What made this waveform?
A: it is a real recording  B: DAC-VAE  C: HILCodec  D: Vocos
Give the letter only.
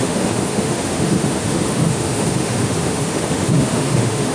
B